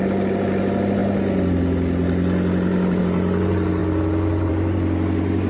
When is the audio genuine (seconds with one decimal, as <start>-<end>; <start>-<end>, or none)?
0.0-5.5